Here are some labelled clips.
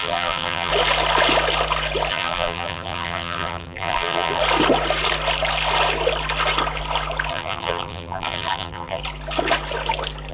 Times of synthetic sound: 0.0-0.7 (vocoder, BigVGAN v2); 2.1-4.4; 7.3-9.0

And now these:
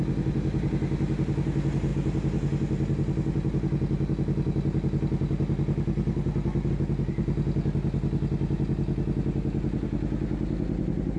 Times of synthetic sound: none

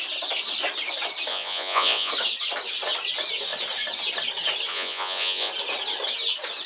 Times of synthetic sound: 1.3-2.1 (vocoder, Vocos); 4.7-5.5

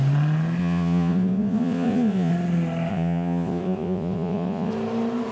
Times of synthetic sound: 0.6-2.3 (vocoder, Vocos); 2.9-4.7

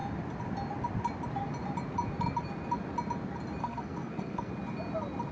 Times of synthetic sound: 3.6-4.5 (codec, SNAC)